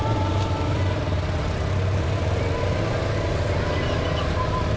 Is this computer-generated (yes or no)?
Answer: no